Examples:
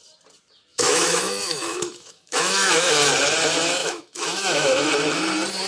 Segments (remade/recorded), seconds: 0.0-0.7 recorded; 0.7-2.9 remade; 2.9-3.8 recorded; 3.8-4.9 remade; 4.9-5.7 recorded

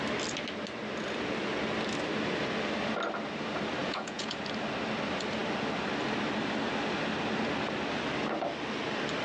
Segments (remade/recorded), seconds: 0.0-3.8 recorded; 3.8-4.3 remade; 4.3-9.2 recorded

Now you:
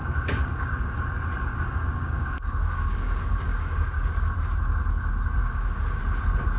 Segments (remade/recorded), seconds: 0.0-1.0 remade; 1.0-1.5 recorded; 1.5-4.1 remade; 4.1-5.4 recorded; 5.4-6.0 remade; 6.0-6.6 recorded

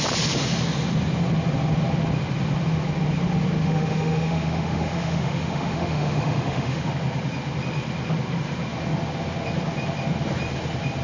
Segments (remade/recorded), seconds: 0.0-3.6 recorded; 3.6-6.9 remade; 6.9-11.0 recorded

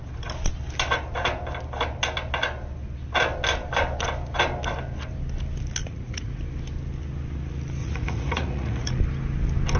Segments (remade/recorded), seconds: 0.0-5.8 recorded; 5.8-6.4 remade; 6.4-7.8 recorded; 7.8-9.0 remade; 9.0-9.8 recorded

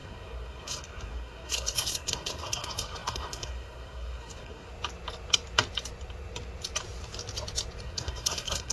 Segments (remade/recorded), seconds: 0.0-4.7 remade; 4.7-7.8 recorded; 7.8-8.7 remade

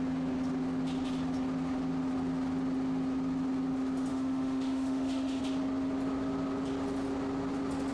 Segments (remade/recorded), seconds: 0.0-4.1 recorded; 4.1-5.4 remade; 5.4-7.9 recorded